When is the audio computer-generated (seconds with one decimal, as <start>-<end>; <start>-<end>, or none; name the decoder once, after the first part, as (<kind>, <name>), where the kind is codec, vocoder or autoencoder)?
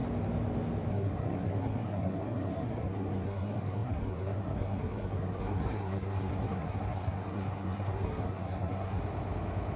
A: 0.9-9.0 (codec, SNAC)